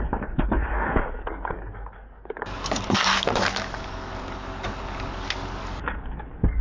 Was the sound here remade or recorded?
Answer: remade